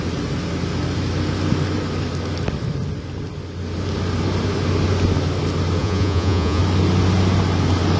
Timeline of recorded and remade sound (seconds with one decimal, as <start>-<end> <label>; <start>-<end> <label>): 0.0-5.8 recorded; 5.8-6.6 remade; 6.6-8.0 recorded